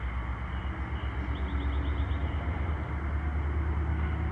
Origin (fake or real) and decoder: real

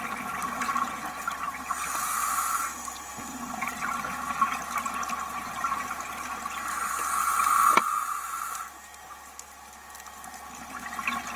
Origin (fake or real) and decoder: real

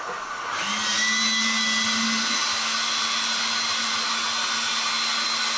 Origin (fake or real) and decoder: real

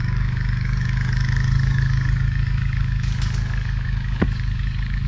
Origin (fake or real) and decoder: fake, codec, DAC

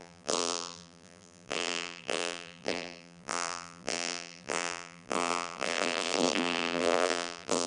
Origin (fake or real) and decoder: fake, vocoder, BigVGAN v2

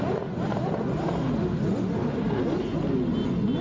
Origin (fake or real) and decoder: real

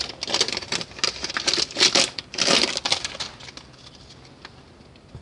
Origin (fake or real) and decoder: real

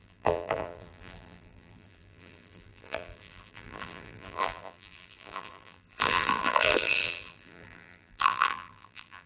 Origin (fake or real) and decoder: fake, vocoder, BigVGAN v2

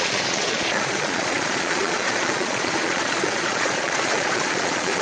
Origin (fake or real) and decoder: fake, vocoder, Vocos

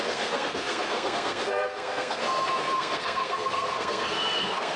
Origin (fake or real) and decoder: fake, codec, SNAC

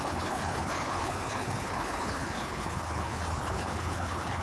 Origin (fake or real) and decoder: fake, codec, HILCodec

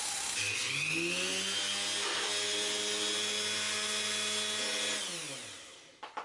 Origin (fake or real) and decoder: real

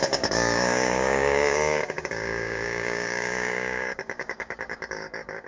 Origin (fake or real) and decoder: fake, codec, DAC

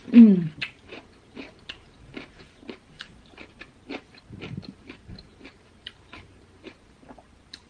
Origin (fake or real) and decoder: fake, vocoder, BigVGAN v2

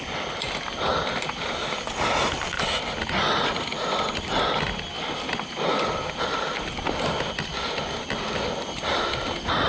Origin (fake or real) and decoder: real